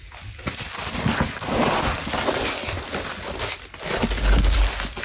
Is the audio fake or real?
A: real